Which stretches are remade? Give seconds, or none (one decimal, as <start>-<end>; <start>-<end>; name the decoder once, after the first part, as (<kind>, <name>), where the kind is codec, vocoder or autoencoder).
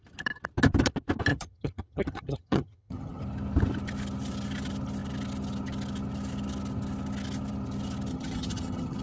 1.3-3.2 (vocoder, HiFi-GAN); 8.1-9.0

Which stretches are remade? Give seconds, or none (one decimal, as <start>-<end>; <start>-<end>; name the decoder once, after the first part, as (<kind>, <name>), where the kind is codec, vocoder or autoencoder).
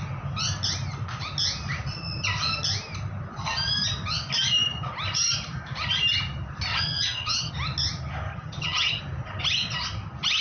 6.7-7.5 (vocoder, HiFi-GAN); 8.3-9.0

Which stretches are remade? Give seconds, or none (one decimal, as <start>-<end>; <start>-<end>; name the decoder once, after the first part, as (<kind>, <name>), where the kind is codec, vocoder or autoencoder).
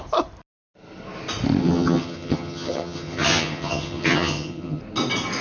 1.6-4.8 (vocoder, HiFi-GAN)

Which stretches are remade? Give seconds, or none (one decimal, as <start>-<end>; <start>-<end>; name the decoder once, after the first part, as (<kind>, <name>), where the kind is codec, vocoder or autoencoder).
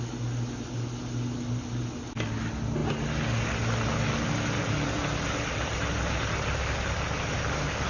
none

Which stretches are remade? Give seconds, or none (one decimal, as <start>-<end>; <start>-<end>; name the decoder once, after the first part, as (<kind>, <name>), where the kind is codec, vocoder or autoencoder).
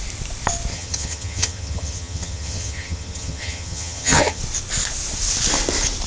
0.7-4.4 (vocoder, HiFi-GAN)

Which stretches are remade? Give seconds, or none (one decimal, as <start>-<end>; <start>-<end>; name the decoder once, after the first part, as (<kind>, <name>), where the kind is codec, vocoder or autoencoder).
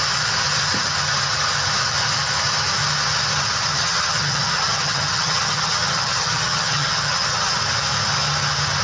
3.7-7.6 (vocoder, HiFi-GAN)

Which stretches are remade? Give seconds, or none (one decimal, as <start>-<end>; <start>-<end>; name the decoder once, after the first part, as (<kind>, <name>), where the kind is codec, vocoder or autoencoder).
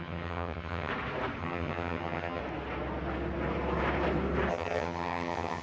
0.0-0.9 (vocoder, HiFi-GAN); 1.4-2.4; 4.5-5.6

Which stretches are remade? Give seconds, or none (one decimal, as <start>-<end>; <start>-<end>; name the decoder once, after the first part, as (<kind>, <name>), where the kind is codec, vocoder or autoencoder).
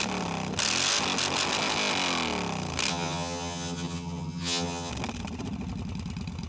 2.9-4.9 (vocoder, HiFi-GAN)